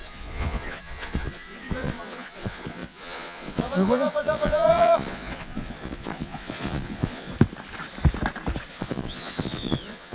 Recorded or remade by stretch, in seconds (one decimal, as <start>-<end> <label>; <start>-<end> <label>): 0.0-7.3 remade; 7.3-8.7 recorded; 8.7-10.1 remade